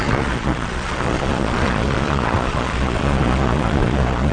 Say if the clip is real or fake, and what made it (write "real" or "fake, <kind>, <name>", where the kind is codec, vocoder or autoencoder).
fake, vocoder, Vocos